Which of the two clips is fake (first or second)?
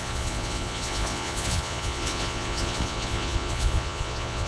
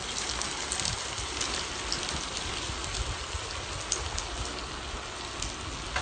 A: first